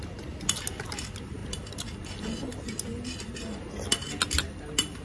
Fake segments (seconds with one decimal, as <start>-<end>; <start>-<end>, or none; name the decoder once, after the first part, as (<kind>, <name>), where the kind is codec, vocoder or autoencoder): none